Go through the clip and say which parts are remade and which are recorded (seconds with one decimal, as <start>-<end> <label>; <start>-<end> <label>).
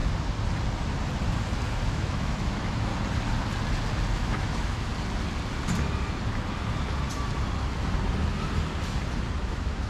0.0-1.9 recorded; 1.9-2.9 remade; 2.9-4.2 recorded; 4.2-4.9 remade; 4.9-9.4 recorded; 9.4-9.9 remade